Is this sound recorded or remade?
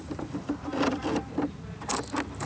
recorded